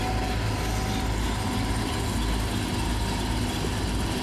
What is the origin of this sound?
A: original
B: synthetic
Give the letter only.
A